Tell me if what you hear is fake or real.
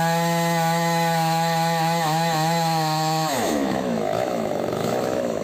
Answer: fake